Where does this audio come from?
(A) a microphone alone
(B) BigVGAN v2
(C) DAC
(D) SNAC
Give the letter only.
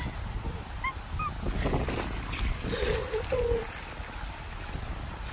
A